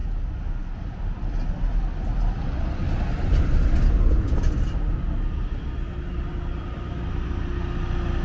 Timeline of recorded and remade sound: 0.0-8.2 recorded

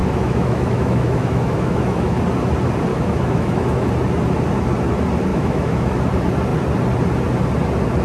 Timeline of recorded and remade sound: 0.0-2.2 remade; 2.2-2.9 recorded; 2.9-3.9 remade; 3.9-5.3 recorded; 5.3-6.0 remade; 6.0-8.0 recorded

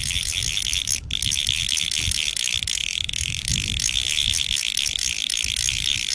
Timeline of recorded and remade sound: 0.0-2.8 recorded; 2.8-3.5 remade; 3.5-6.1 recorded

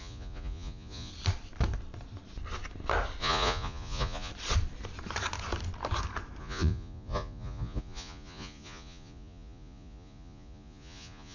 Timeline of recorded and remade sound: 0.0-1.1 remade; 1.1-3.2 recorded; 3.2-4.3 remade; 4.3-6.4 recorded; 6.4-11.3 remade